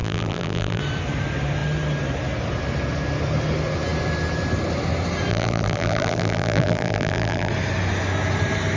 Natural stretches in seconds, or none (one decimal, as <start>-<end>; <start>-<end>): 0.8-5.3; 7.5-8.8